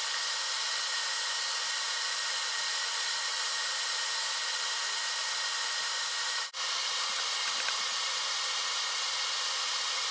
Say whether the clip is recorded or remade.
recorded